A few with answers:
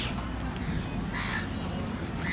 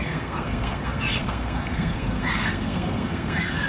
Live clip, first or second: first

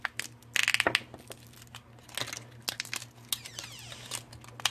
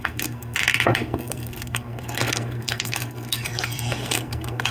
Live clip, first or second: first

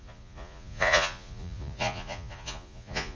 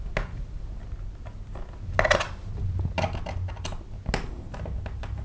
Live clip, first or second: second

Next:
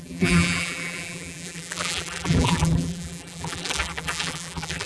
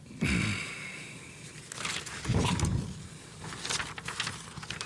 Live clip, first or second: second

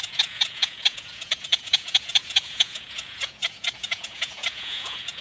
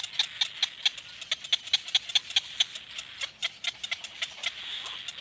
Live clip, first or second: second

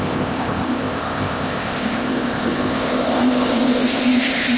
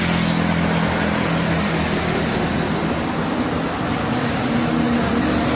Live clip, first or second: second